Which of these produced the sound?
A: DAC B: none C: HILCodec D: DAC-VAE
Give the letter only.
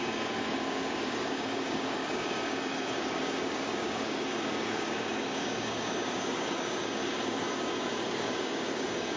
A